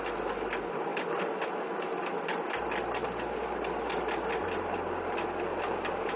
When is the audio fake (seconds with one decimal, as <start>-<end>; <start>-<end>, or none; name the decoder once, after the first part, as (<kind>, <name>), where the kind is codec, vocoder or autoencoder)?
none